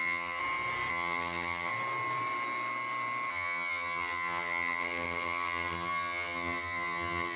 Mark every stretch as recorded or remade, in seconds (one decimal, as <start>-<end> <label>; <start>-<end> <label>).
0.0-0.4 remade; 0.4-0.9 recorded; 0.9-1.7 remade; 1.7-3.3 recorded; 3.3-7.4 remade